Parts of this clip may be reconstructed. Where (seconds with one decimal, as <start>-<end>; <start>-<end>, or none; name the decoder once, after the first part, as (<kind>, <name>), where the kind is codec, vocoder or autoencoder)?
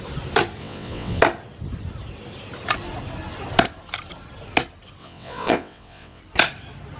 0.6-1.2 (vocoder, WaveNeXt); 5.0-6.2